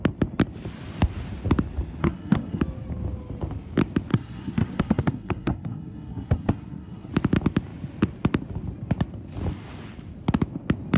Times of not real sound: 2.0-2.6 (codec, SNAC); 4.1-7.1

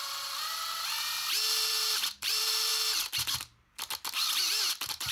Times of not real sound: 0.0-0.6 (vocoder, BigVGAN v2); 1.7-2.7; 4.6-5.1

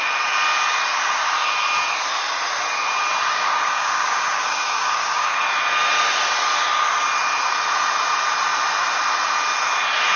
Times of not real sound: 3.3-5.4 (codec, DAC)

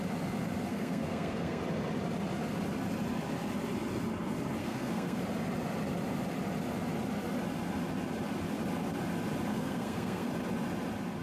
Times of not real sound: 0.7-1.6 (codec, SNAC); 4.6-5.2; 9.5-10.3